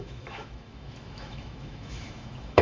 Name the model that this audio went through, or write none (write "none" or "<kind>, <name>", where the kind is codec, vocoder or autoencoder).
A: autoencoder, DAC-VAE